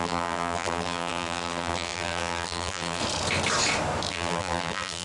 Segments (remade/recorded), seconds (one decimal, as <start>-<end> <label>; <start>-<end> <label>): 0.0-3.0 remade; 3.0-4.1 recorded; 4.1-5.0 remade